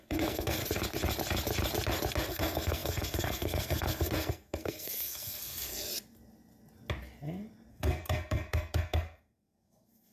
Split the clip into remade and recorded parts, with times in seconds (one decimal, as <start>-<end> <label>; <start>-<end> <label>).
0.0-0.6 remade; 0.6-2.3 recorded; 2.3-5.9 remade; 5.9-7.7 recorded; 7.7-10.1 remade